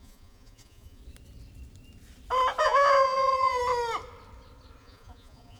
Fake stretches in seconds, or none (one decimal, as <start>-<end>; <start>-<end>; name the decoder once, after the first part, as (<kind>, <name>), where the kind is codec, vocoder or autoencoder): 0.0-1.0 (vocoder, Vocos); 2.6-3.6; 4.8-5.6